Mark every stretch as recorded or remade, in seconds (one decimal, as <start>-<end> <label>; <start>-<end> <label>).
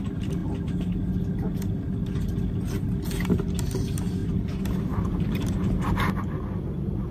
0.0-4.2 recorded; 4.2-5.9 remade; 5.9-7.1 recorded